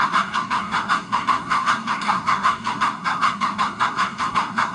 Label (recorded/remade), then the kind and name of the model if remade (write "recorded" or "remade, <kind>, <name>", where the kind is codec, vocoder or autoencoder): remade, codec, SNAC